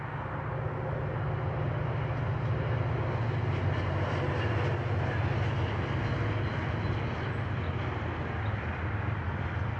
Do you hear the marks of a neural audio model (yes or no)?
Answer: no